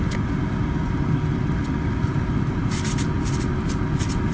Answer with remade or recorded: recorded